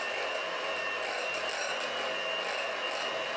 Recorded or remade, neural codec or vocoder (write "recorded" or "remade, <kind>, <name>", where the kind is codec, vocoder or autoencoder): recorded